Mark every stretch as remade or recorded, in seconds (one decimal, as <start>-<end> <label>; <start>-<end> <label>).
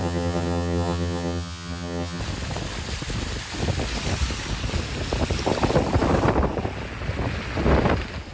0.0-2.2 remade; 2.2-8.3 recorded